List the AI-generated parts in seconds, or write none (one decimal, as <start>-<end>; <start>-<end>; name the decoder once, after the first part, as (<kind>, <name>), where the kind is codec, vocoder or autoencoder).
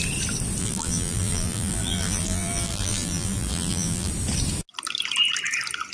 0.6-4.1 (vocoder, BigVGAN v2)